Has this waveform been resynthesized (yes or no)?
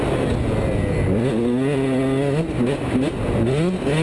no